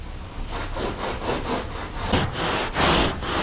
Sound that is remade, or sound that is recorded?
recorded